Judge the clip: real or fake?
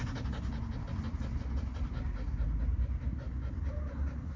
real